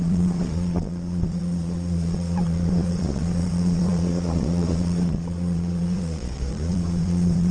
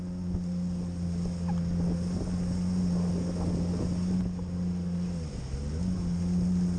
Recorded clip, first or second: second